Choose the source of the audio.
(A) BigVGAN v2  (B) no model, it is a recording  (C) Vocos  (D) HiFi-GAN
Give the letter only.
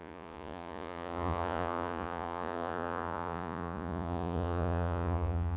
C